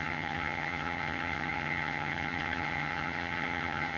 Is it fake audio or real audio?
fake